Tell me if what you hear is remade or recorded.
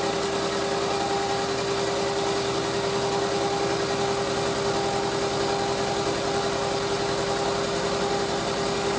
recorded